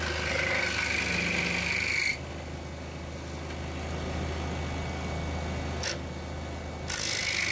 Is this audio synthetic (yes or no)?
no